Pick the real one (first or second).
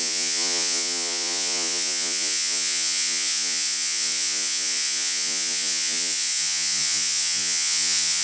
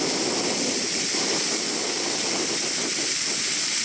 second